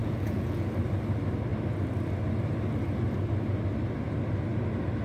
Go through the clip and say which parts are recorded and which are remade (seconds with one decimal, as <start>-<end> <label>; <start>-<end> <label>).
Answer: 0.0-0.7 remade; 0.7-5.0 recorded